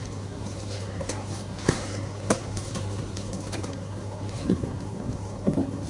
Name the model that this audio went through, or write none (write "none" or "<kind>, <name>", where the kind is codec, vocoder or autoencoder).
codec, SNAC